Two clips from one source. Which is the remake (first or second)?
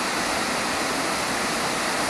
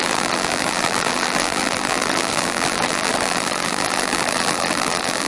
second